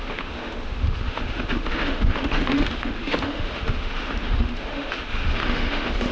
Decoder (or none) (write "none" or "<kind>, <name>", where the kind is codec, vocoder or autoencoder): autoencoder, DAC-VAE